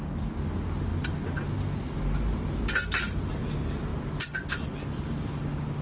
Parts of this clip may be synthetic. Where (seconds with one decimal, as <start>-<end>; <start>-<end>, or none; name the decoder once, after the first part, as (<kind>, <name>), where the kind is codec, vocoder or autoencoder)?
none